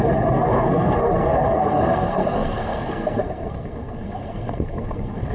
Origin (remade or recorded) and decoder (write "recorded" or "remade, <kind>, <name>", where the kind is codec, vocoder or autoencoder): remade, codec, SNAC